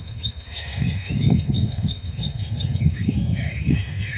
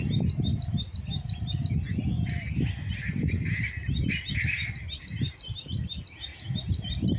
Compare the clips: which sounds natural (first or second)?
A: second